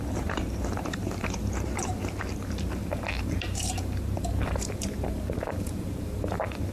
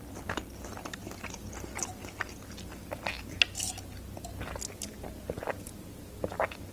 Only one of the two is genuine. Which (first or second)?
second